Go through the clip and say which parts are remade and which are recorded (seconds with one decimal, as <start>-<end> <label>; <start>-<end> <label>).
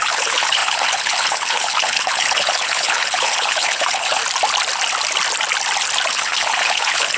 0.0-4.2 remade; 4.2-6.1 recorded; 6.1-7.2 remade